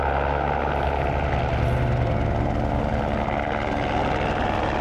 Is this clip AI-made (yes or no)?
no